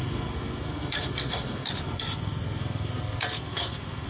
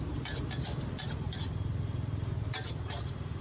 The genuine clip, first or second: second